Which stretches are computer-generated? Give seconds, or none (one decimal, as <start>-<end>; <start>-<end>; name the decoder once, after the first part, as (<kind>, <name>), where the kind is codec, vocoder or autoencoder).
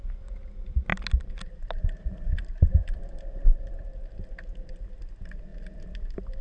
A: none